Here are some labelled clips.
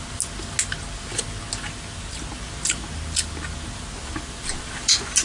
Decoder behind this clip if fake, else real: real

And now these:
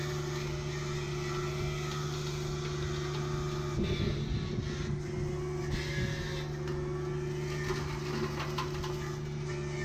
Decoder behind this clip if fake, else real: real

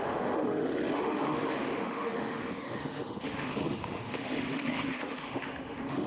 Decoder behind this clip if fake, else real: fake, autoencoder, DAC-VAE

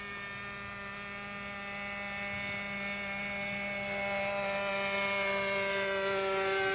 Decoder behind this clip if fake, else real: real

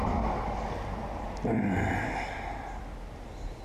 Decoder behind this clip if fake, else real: real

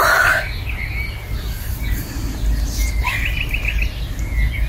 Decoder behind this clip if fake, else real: real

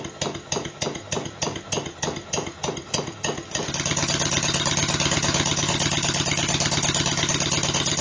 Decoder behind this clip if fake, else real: real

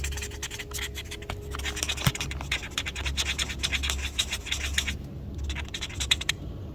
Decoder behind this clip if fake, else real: real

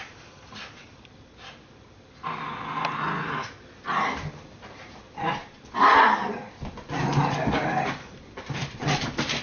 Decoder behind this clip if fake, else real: real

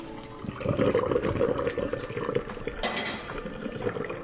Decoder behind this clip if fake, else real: real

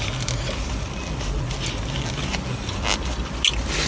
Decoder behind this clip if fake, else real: real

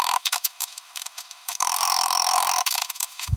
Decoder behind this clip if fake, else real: fake, autoencoder, DAC-VAE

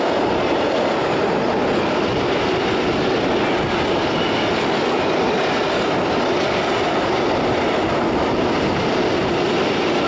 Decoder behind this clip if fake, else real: real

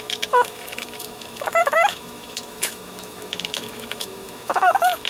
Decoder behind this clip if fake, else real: fake, autoencoder, DAC-VAE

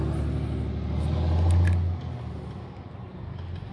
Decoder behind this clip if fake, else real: real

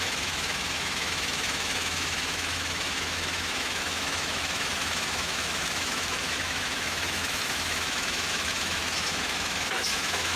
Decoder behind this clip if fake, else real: fake, autoencoder, DAC-VAE